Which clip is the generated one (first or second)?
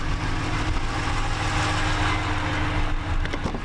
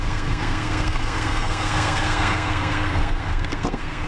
second